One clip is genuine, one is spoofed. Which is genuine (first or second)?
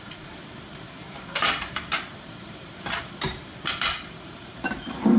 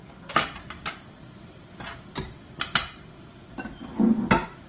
second